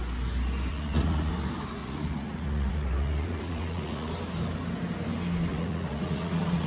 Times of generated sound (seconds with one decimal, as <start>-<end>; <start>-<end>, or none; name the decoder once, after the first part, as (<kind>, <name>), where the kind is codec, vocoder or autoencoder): 0.7-1.3 (vocoder, Vocos); 1.8-4.1; 5.5-6.7